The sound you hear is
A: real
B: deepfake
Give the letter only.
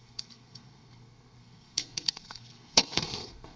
B